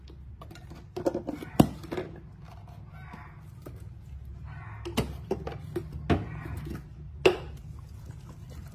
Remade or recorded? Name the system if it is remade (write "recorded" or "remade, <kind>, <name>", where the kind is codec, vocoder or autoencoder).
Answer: recorded